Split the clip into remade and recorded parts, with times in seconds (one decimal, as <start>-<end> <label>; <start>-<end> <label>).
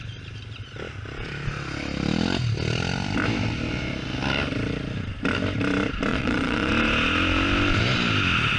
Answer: 0.0-6.1 recorded; 6.1-6.7 remade; 6.7-8.6 recorded